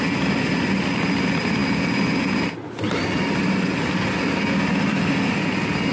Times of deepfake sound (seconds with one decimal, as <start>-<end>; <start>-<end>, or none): none